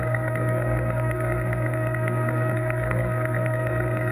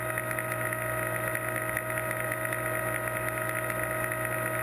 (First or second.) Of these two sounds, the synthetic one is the first